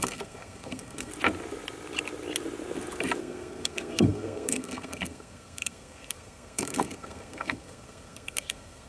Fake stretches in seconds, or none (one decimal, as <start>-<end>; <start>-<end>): 0.0-1.1; 3.2-8.9

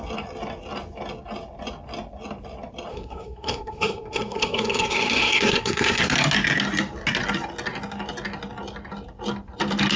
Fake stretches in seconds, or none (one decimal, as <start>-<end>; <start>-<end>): 2.9-6.0

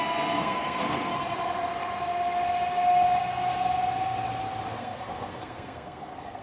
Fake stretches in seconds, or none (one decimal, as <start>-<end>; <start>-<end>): 0.0-1.1; 4.8-6.4